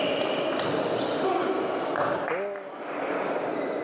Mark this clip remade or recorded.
recorded